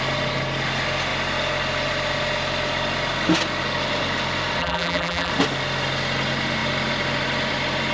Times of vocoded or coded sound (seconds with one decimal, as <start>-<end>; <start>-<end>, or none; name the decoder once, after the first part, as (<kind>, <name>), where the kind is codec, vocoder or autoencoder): 4.6-5.3 (vocoder, BigVGAN v2)